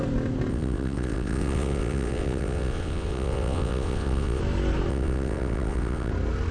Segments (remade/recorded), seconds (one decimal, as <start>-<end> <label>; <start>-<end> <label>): 0.0-0.5 recorded; 0.5-4.4 remade; 4.4-4.9 recorded; 4.9-6.1 remade; 6.1-6.5 recorded